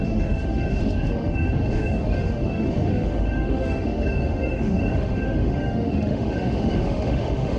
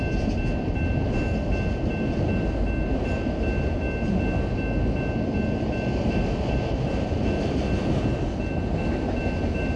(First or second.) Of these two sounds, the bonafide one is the second